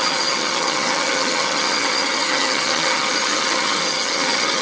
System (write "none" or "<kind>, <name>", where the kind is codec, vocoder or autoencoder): vocoder, HiFi-GAN